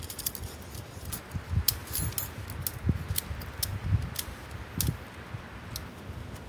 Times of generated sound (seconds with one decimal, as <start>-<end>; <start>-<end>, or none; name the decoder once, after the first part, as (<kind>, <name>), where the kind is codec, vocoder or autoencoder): none